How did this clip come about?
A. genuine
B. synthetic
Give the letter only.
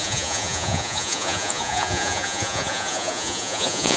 B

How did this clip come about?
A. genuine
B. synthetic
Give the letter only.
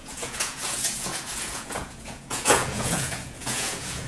B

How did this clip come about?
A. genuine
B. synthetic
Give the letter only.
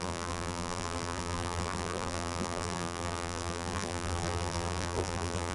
B